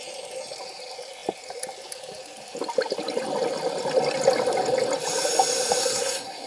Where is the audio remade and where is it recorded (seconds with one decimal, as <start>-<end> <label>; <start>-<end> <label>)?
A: 0.0-5.8 recorded; 5.8-6.5 remade